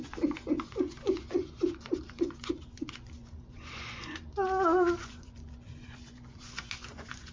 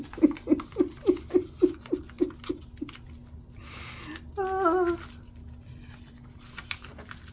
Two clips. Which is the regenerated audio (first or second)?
first